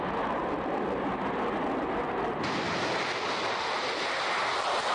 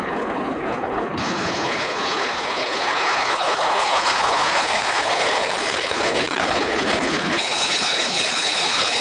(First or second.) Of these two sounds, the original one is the first